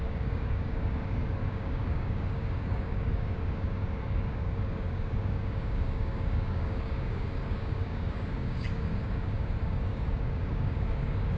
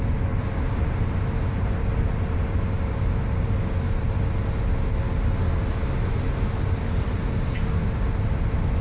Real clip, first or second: second